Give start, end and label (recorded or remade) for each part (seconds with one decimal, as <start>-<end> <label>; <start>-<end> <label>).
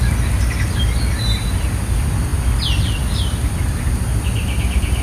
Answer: 0.0-5.0 recorded